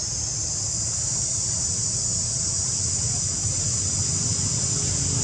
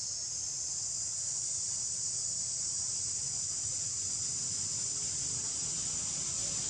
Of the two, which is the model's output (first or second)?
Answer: second